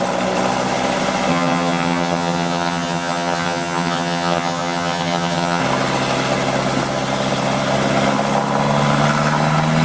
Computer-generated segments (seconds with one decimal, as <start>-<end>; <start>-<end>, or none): 1.3-5.6